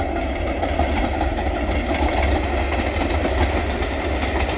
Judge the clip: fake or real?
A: real